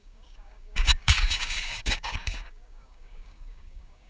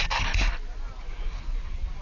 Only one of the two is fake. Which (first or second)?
first